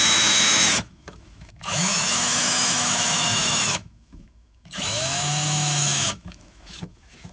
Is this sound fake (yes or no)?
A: yes